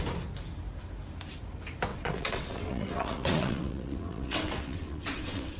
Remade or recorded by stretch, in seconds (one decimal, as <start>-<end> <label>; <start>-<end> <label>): 0.0-1.9 recorded; 1.9-5.6 remade